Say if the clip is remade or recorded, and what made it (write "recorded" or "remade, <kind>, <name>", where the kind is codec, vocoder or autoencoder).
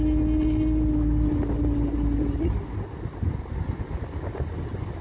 recorded